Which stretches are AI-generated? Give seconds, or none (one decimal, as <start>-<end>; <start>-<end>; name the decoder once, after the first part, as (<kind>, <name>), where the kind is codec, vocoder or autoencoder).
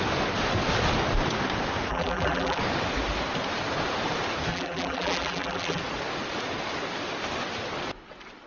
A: 1.9-2.6 (vocoder, BigVGAN v2); 4.5-5.8